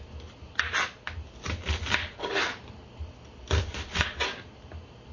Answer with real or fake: real